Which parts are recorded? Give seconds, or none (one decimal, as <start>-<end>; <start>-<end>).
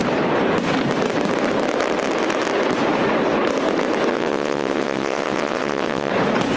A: 0.0-4.1; 6.1-6.6